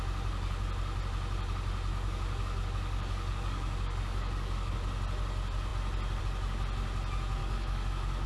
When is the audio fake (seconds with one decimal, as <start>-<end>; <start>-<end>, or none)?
1.9-4.7; 7.4-8.3